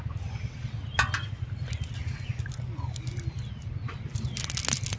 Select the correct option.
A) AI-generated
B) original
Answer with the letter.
B